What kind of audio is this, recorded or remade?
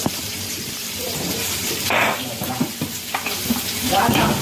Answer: remade